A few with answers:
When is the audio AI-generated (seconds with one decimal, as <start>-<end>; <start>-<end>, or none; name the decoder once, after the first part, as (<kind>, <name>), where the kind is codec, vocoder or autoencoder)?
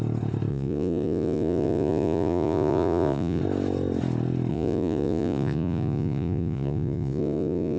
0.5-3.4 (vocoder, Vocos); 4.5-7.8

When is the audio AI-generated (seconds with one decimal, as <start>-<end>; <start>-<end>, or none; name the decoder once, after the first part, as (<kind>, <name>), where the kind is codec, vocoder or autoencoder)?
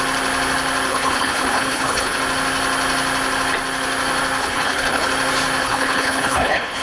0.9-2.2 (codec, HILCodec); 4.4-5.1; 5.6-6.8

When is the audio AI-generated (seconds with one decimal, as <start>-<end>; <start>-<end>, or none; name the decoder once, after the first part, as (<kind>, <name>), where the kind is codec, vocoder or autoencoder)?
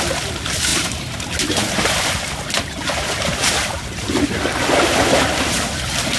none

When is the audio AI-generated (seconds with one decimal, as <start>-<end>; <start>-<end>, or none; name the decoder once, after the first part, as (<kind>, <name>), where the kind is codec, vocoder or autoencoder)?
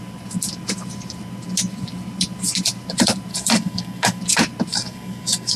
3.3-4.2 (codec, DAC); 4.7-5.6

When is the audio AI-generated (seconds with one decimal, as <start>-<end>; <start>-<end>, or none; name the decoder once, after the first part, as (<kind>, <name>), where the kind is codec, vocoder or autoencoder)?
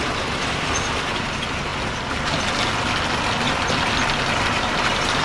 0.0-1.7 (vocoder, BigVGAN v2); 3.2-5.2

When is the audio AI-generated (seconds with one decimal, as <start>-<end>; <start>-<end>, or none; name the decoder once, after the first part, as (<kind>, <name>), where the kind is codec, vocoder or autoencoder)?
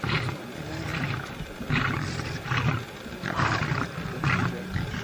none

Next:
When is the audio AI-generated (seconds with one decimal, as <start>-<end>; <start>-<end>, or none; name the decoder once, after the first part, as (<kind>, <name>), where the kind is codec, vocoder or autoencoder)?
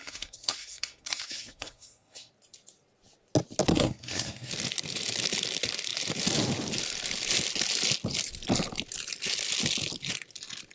0.0-2.3 (codec, SNAC); 3.7-4.5